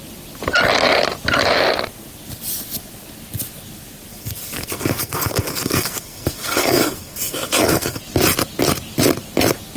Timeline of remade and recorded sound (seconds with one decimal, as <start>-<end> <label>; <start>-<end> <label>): 0.0-4.1 recorded; 4.1-8.0 remade; 8.0-9.8 recorded

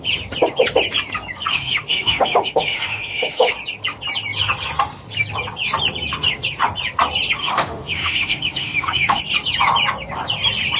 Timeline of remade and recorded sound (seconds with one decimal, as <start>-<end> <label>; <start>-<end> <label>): 0.0-1.5 recorded; 1.5-3.5 remade; 3.5-7.4 recorded; 7.4-9.2 remade; 9.2-10.8 recorded

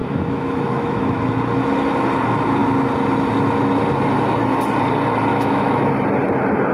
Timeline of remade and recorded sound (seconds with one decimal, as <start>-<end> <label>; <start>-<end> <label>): 0.0-1.2 remade; 1.2-5.3 recorded; 5.3-5.9 remade; 5.9-6.7 recorded

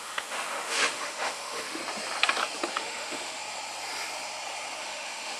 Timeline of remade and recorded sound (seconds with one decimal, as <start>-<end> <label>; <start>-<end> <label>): 0.0-1.8 remade; 1.8-2.7 recorded; 2.7-3.4 remade; 3.4-4.8 recorded; 4.8-5.4 remade

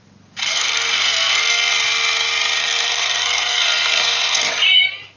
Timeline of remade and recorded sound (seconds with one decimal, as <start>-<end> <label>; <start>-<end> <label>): 0.0-0.4 recorded; 0.4-1.7 remade; 1.7-2.6 recorded; 2.6-4.5 remade; 4.5-5.2 recorded

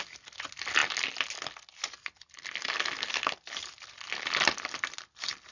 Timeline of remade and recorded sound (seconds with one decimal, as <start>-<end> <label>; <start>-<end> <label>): 0.0-5.5 recorded